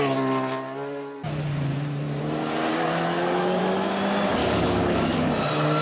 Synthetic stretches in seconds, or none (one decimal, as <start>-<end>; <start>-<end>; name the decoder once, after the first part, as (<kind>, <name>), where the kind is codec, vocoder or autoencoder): 2.7-3.6 (codec, DAC); 4.4-5.3